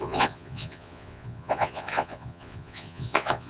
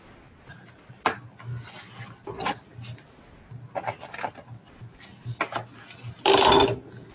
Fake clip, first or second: first